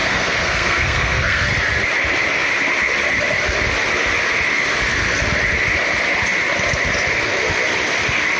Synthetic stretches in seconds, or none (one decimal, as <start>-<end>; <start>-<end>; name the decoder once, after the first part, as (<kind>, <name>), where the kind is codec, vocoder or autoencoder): 0.0-1.5 (codec, SNAC)